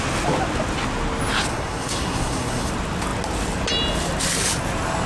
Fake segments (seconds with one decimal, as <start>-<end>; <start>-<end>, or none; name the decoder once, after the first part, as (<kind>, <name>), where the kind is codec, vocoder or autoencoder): 1.5-2.7 (codec, SNAC)